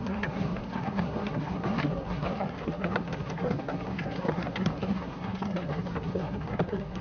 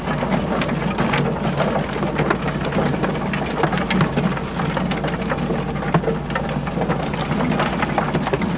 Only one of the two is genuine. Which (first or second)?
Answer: second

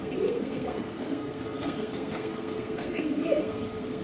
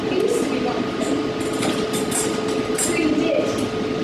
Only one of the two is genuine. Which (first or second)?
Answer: second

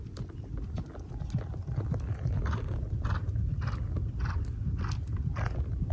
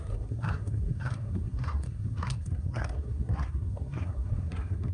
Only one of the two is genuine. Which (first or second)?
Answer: first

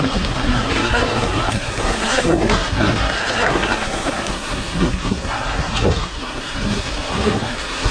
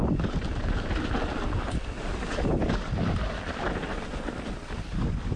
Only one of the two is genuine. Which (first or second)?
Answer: second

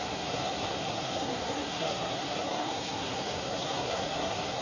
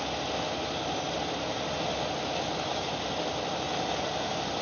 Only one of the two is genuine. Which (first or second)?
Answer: second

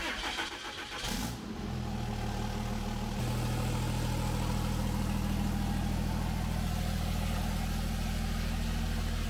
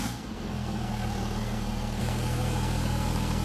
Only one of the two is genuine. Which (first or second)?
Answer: first